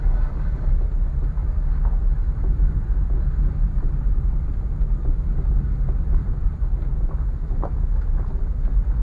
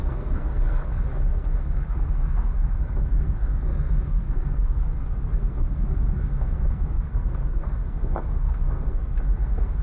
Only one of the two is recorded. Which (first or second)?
first